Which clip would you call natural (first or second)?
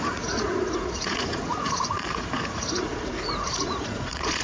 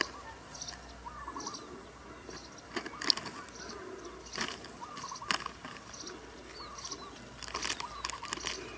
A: second